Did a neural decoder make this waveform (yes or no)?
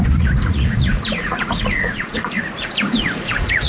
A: yes